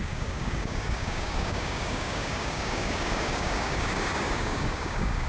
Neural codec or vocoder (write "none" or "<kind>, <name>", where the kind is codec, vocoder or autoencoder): codec, DAC